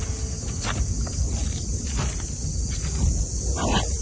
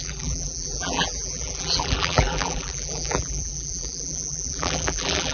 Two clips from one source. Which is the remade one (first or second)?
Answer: second